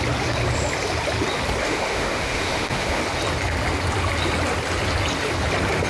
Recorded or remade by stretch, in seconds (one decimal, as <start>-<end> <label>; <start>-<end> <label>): 0.0-1.6 recorded; 1.6-3.0 remade; 3.0-5.9 recorded